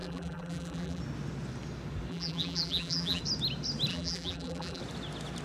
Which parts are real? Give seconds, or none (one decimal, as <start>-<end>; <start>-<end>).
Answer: 1.0-2.1; 3.2-3.9; 4.8-5.4